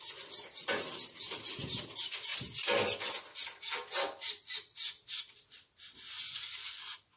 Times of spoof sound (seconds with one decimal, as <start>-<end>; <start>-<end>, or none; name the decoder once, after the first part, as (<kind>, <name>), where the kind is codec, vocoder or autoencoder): none